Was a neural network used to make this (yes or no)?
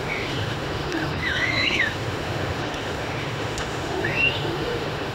yes